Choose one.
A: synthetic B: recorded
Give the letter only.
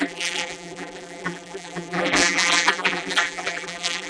A